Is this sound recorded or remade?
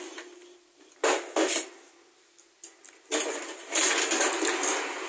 recorded